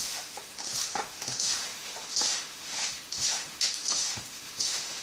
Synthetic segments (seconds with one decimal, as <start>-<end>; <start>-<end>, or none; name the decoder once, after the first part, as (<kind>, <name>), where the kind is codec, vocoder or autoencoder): 0.0-5.0 (autoencoder, DAC-VAE)